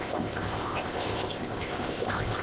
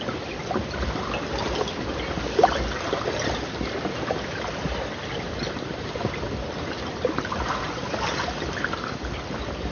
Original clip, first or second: second